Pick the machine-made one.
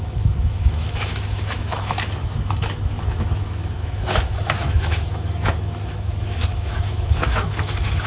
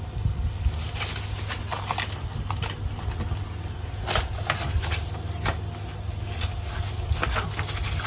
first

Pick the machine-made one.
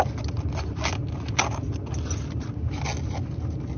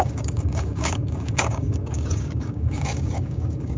second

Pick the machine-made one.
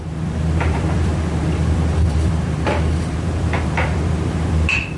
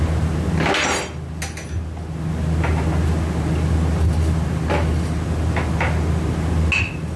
first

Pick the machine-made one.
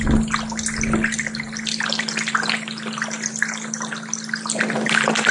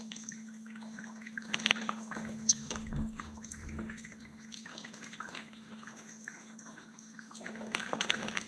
second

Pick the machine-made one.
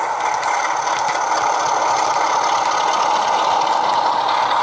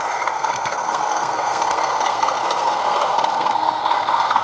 second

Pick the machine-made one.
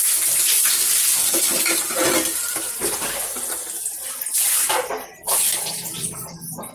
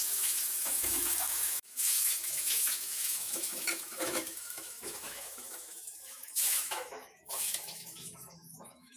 second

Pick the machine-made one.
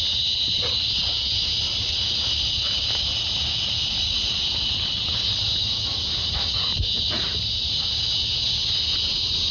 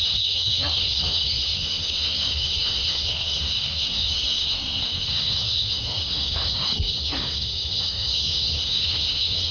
second